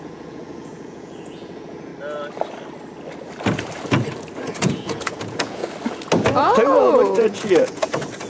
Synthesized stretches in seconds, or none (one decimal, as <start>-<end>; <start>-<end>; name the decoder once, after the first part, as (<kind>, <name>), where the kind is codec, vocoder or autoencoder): 0.0-1.9 (vocoder, Vocos); 4.4-5.6; 6.3-8.3